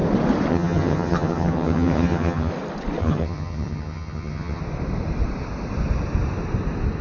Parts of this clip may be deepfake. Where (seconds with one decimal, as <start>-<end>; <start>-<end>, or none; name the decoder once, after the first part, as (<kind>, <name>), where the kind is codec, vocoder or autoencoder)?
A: 0.5-2.5 (vocoder, HiFi-GAN); 3.0-4.6